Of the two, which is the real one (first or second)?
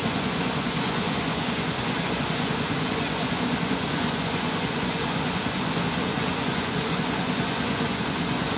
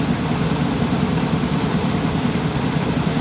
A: second